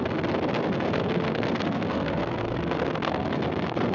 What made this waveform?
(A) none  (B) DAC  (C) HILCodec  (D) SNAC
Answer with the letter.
D